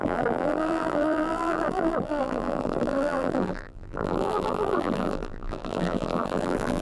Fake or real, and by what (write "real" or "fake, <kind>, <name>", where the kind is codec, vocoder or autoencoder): fake, vocoder, BigVGAN v2